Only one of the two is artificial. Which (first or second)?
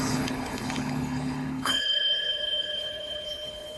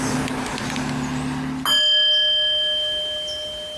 first